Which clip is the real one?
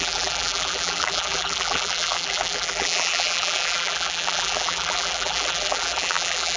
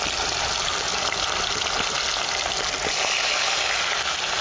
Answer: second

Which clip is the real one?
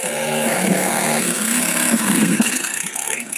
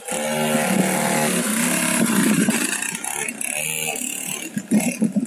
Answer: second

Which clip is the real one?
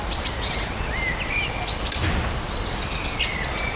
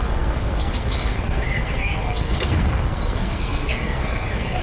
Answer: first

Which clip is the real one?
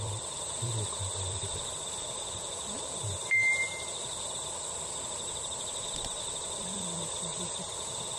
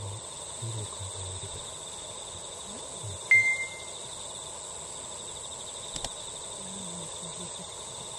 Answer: second